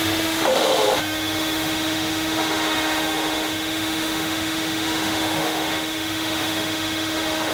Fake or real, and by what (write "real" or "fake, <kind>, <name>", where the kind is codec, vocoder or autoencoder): fake, autoencoder, DAC-VAE